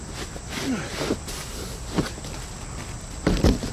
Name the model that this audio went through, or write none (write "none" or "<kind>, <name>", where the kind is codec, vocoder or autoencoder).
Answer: none